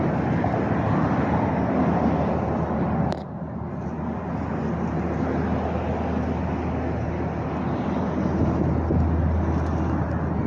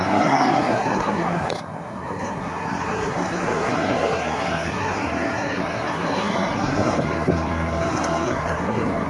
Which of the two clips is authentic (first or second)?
first